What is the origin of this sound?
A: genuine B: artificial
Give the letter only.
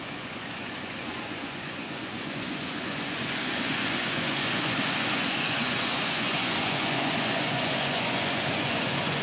B